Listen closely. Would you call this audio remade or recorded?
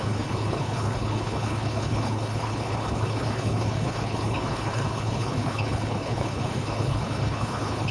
remade